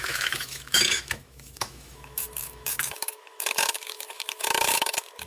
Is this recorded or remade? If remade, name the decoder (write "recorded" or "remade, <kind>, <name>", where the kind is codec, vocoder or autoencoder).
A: remade, autoencoder, DAC-VAE